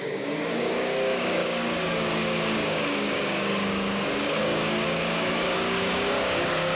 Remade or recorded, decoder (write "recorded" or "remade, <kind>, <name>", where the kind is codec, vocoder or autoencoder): remade, codec, DAC